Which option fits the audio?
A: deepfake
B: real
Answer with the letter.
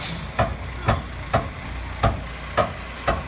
B